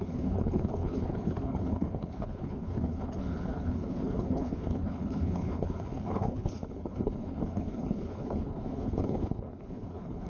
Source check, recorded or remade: remade